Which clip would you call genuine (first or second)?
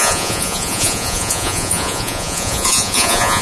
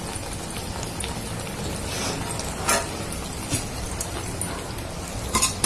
second